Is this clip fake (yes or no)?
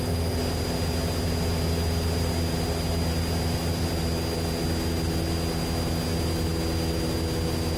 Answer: no